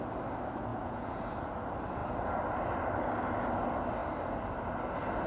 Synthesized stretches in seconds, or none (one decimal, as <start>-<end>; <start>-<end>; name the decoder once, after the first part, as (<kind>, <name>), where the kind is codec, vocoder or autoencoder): 0.7-1.2 (vocoder, Vocos)